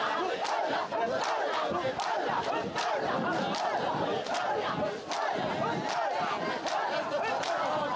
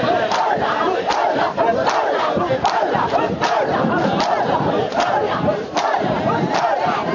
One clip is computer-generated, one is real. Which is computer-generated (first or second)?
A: second